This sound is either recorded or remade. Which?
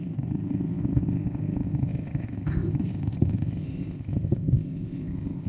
remade